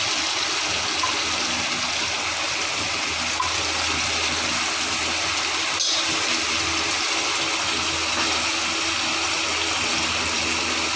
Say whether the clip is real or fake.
real